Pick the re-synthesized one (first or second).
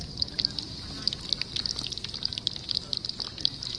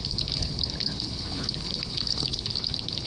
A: second